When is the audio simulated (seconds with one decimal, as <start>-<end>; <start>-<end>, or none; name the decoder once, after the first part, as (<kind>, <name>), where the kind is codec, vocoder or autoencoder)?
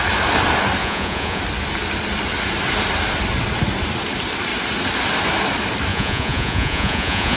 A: 0.8-1.4 (vocoder, Vocos); 5.9-7.4